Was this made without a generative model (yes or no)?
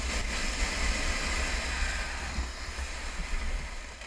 yes